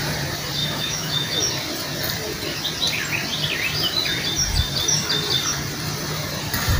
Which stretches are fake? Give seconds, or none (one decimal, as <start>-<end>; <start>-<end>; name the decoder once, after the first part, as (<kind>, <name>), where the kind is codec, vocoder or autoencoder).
0.6-1.4 (autoencoder, DAC-VAE)